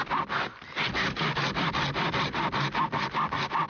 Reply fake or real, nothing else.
real